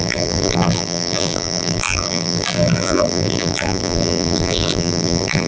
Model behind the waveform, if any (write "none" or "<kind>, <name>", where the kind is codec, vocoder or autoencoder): vocoder, BigVGAN v2